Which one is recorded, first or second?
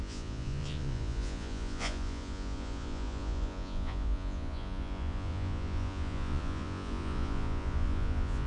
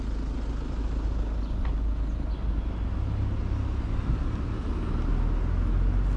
second